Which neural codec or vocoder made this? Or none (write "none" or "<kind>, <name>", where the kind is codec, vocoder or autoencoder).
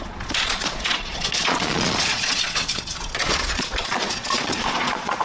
vocoder, Vocos